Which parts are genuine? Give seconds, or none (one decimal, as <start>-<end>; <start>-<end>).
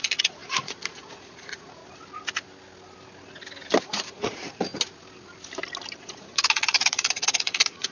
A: 1.8-3.8; 4.7-6.0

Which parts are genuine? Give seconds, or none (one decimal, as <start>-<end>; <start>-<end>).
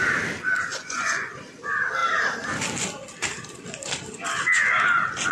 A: 0.0-0.7; 1.3-5.3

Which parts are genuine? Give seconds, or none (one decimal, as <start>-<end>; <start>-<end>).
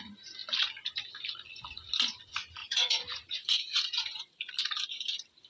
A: 0.0-2.6; 4.5-5.5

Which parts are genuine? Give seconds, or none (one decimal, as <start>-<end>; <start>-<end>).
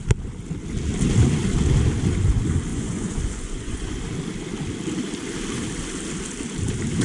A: 0.0-2.7; 4.0-7.0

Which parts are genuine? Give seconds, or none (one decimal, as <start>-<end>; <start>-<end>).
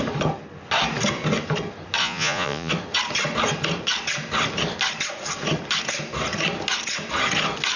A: 0.0-2.0; 2.7-7.8